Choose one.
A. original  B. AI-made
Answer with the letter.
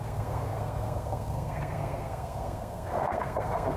B